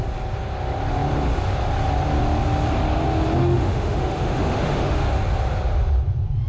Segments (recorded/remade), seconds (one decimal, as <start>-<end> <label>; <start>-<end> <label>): 0.0-3.4 recorded; 3.4-5.1 remade; 5.1-6.5 recorded